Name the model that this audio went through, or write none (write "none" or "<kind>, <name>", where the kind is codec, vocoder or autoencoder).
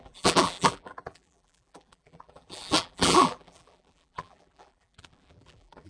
vocoder, BigVGAN v2